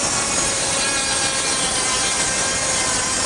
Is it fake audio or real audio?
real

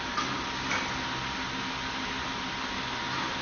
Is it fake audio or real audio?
real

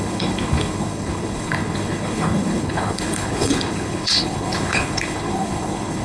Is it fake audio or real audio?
fake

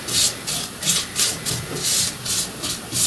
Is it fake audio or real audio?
real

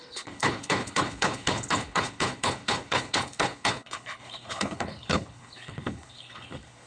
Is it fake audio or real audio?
fake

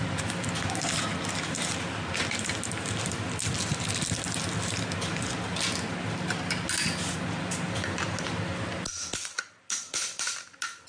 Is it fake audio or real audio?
real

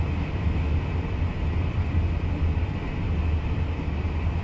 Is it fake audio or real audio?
real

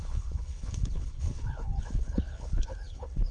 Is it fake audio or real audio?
fake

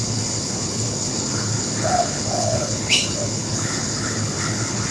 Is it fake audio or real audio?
fake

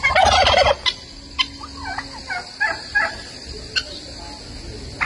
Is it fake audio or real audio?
real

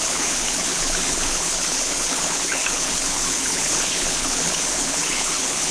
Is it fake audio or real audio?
fake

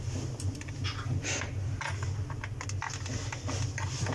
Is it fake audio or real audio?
real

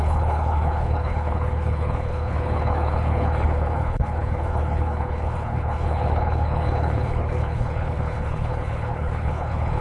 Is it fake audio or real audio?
fake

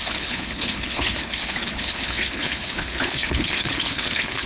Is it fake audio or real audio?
fake